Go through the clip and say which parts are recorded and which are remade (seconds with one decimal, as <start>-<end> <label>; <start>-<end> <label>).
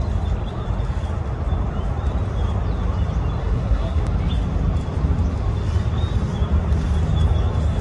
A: 0.0-3.4 recorded; 3.4-4.0 remade; 4.0-7.8 recorded